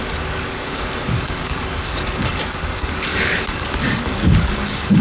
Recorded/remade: remade